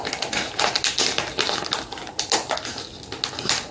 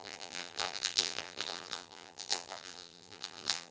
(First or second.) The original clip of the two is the first